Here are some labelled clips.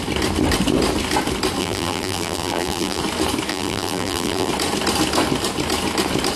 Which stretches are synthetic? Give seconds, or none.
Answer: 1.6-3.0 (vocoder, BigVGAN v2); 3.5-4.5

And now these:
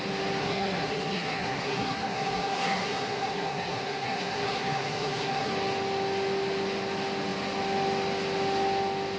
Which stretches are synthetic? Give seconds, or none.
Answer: 0.4-5.5 (codec, SNAC)

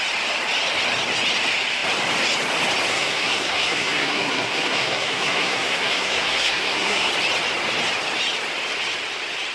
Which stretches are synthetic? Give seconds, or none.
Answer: 2.9-7.1 (codec, SNAC)

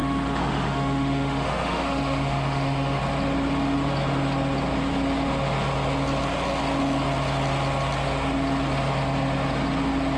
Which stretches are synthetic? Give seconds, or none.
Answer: 0.0-3.0 (autoencoder, DAC-VAE)

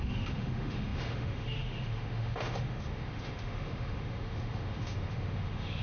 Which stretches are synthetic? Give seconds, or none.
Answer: 0.0-5.8 (autoencoder, DAC-VAE)

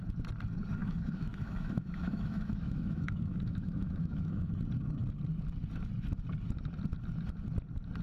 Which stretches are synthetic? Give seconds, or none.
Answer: 0.8-4.5 (autoencoder, DAC-VAE)

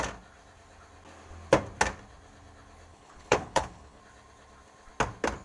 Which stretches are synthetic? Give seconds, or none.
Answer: 2.9-4.0 (codec, HILCodec)